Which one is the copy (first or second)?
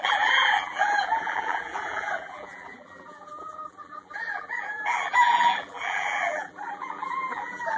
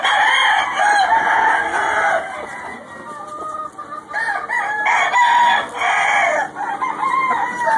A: first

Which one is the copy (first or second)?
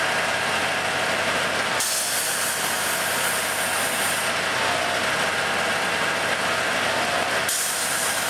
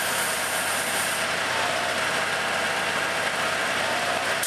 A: second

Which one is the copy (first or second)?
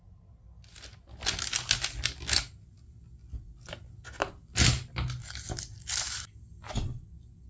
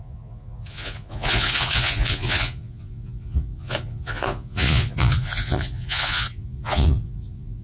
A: second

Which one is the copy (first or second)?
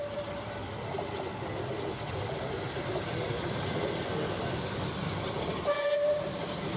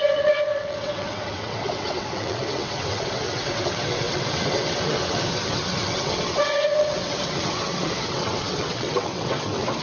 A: second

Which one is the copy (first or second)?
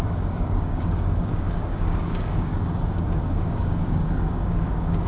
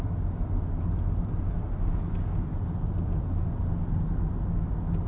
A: first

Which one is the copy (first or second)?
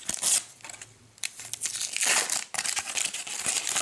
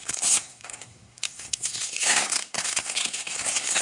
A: second